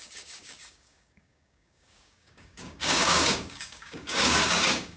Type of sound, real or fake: fake